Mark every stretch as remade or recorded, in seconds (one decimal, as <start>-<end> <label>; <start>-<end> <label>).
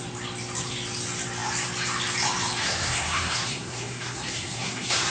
0.0-2.6 recorded; 2.6-5.1 remade